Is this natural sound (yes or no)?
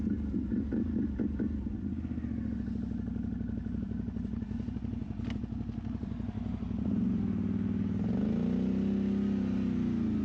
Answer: yes